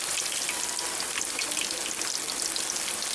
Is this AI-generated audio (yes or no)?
no